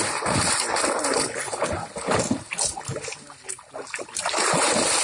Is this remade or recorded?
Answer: recorded